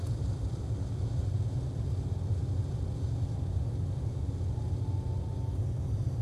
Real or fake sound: real